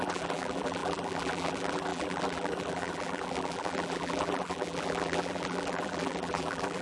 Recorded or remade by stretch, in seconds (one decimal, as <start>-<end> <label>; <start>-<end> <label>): 0.0-6.8 remade